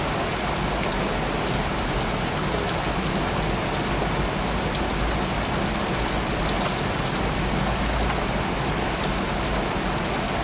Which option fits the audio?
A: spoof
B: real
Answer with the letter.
B